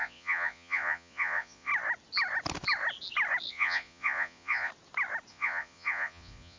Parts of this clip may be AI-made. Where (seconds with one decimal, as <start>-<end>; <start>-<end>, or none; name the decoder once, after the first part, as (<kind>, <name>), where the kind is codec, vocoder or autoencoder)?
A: 0.0-1.7 (vocoder, Vocos); 3.5-4.7; 5.3-6.6